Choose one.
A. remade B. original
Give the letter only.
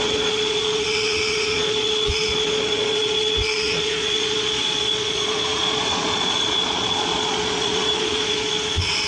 A